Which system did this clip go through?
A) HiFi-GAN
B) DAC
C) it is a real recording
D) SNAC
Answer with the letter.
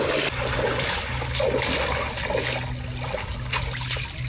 C